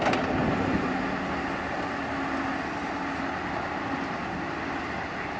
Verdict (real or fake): real